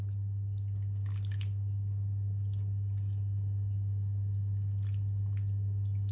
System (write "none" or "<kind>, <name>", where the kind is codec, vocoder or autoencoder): none